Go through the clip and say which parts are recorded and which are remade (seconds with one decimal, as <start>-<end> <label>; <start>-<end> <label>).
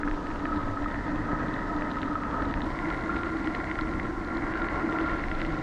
0.0-5.6 recorded